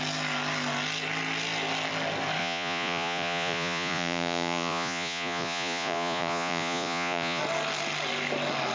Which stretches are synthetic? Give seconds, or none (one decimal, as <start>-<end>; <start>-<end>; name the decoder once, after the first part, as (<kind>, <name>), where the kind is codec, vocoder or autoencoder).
2.4-7.4 (vocoder, Vocos)